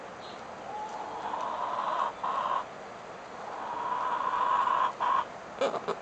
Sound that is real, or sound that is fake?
real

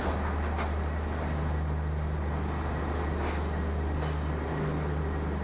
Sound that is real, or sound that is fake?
real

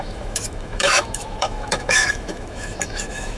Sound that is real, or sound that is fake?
fake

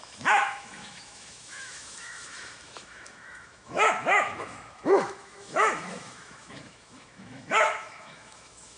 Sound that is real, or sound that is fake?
fake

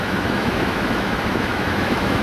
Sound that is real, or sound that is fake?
fake